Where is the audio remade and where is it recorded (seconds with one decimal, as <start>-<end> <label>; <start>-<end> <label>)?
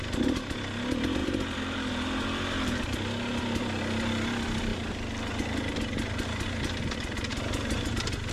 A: 0.0-8.3 recorded